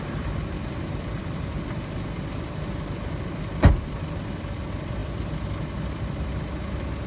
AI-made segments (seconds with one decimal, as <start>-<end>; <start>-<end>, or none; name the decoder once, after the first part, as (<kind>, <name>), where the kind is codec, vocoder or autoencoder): 0.0-5.0 (vocoder, BigVGAN v2); 5.9-7.1